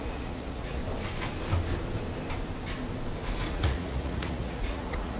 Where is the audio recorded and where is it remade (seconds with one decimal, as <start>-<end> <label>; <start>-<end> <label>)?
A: 0.0-0.8 remade; 0.8-3.5 recorded; 3.5-5.2 remade